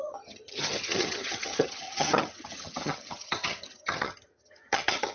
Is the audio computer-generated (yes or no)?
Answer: yes